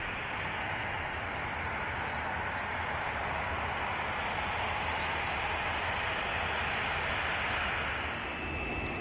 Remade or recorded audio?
recorded